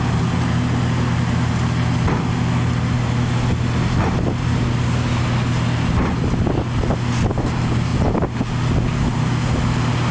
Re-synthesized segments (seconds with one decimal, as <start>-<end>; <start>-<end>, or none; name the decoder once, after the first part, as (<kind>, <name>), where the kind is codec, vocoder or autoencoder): none